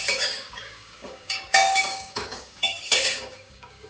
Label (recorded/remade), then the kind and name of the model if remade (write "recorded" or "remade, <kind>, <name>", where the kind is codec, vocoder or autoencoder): remade, codec, DAC